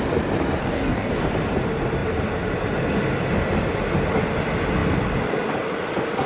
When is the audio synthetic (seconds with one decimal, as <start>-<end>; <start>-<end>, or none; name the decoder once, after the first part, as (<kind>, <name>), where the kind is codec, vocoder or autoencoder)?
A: 0.6-1.1 (codec, DAC)